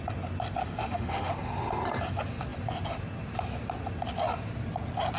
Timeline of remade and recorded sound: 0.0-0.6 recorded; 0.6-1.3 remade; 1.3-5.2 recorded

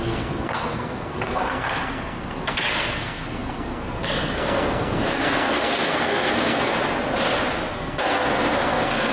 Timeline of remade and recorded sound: 0.0-6.7 remade; 6.7-7.7 recorded; 7.7-9.1 remade

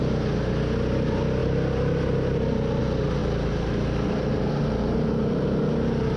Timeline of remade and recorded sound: 0.0-3.2 recorded; 3.2-5.7 remade; 5.7-6.2 recorded

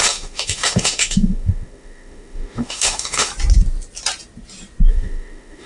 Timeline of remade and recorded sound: 0.0-3.3 remade; 3.3-4.9 recorded; 4.9-5.7 remade

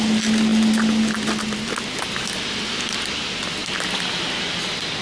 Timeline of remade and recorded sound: 0.0-5.0 recorded